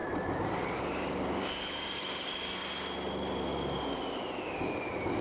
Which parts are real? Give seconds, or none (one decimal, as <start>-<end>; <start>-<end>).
0.0-0.8; 2.6-5.2